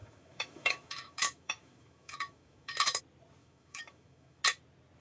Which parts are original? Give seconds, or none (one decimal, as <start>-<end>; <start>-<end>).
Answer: 3.0-3.4; 4.4-5.0